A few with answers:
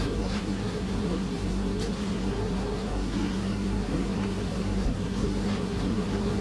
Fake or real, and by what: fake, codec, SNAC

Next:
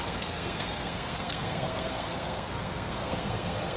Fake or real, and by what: fake, codec, SNAC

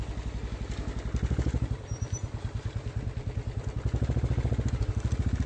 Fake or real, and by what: real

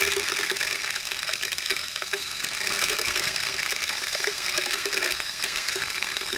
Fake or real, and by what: fake, codec, SNAC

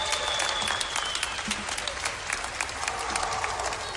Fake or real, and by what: real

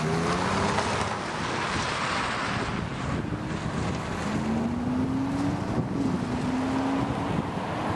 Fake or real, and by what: real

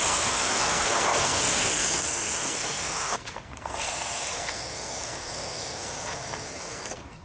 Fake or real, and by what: fake, codec, SNAC